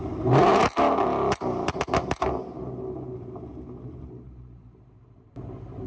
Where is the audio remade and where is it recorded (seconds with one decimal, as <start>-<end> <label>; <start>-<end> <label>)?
0.0-0.5 remade; 0.5-4.0 recorded; 4.0-5.9 remade